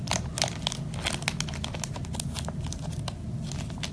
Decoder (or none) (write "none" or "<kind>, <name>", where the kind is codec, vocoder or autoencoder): none